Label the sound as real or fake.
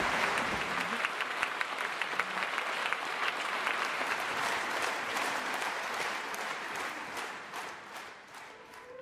fake